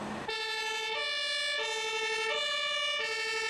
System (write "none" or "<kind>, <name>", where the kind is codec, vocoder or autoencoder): none